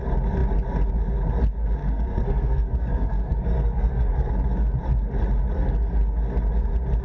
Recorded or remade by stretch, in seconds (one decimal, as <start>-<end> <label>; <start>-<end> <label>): 0.0-1.8 recorded; 1.8-4.3 remade; 4.3-5.5 recorded; 5.5-6.0 remade; 6.0-7.0 recorded